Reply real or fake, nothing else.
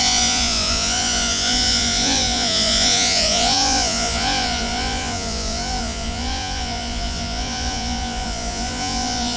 fake